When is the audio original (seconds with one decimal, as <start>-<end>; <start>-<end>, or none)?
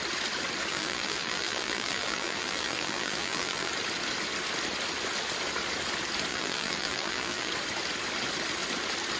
0.0-0.7; 3.7-6.3; 7.5-9.2